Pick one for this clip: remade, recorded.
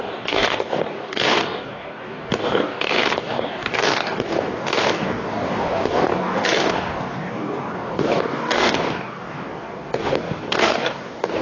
remade